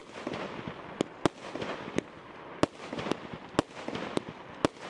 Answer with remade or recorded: recorded